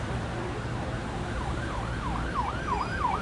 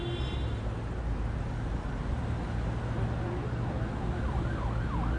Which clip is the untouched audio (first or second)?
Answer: second